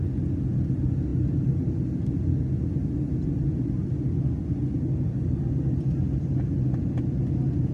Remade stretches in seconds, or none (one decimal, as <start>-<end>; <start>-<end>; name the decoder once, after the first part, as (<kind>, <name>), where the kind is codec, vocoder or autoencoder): none